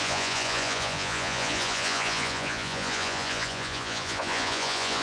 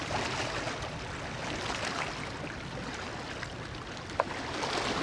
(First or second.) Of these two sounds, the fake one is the first